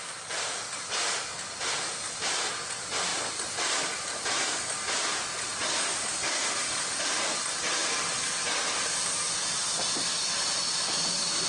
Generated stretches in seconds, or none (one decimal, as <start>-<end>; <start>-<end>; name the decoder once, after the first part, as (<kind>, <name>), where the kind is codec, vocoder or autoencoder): none